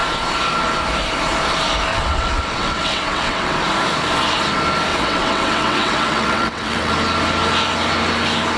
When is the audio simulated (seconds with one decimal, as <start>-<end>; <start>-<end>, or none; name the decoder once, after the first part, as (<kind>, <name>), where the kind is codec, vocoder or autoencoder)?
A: 1.9-3.6 (vocoder, WaveNeXt); 4.9-6.9